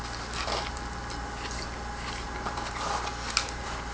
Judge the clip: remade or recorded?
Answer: recorded